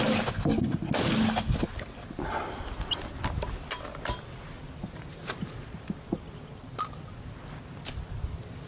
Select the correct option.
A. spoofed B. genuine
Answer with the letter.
B